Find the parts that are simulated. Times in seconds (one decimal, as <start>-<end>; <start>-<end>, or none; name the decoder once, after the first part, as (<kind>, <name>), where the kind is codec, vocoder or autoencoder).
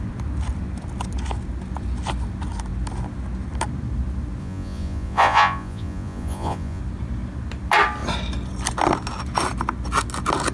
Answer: 4.4-6.8 (vocoder, Vocos)